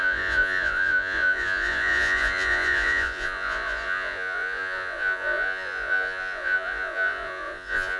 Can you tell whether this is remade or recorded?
remade